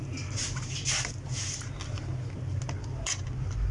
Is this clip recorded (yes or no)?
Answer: yes